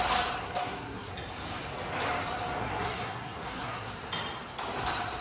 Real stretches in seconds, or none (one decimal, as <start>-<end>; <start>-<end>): 0.0-0.4; 1.1-2.6; 3.9-5.2